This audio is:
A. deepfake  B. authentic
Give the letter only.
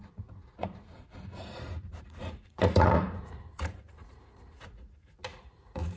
A